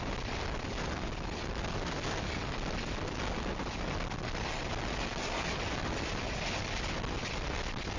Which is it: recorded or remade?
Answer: recorded